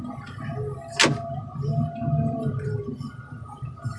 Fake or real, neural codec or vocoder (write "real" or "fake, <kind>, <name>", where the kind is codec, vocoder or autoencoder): real